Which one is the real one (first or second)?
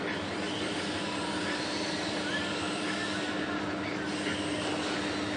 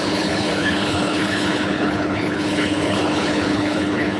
first